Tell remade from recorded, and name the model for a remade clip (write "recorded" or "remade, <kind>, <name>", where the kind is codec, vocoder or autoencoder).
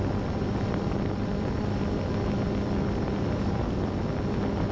recorded